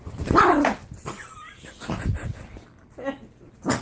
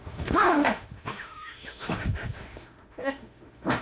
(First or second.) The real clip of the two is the first